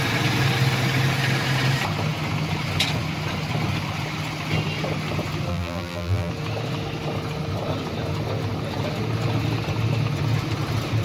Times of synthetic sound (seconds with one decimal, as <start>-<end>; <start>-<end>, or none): 5.5-6.3